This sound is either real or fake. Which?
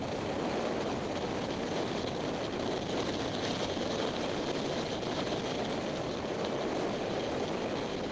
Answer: real